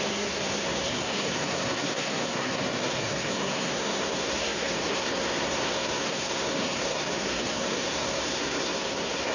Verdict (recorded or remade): remade